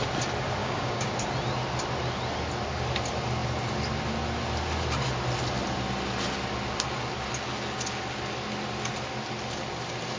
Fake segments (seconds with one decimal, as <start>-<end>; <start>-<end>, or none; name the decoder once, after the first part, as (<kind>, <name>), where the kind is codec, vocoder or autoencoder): 0.6-1.1 (codec, DAC)